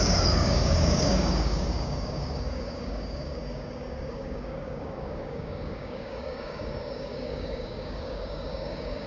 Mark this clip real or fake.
fake